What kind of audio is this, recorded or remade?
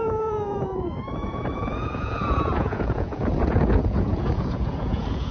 remade